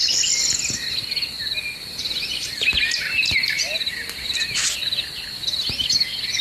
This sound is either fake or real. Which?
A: real